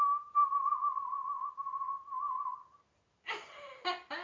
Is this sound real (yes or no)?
yes